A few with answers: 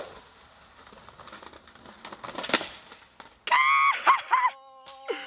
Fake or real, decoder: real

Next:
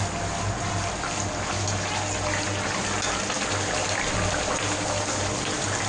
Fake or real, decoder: real